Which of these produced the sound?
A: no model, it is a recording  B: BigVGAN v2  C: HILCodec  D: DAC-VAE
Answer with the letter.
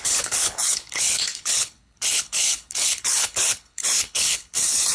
C